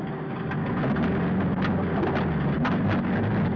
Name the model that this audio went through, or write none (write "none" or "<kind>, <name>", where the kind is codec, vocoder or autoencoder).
none